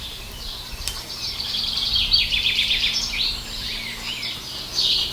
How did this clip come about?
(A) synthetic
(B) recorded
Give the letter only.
A